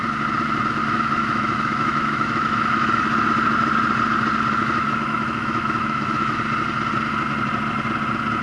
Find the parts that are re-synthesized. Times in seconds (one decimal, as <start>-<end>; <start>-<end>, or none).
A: 0.8-3.0; 4.6-6.4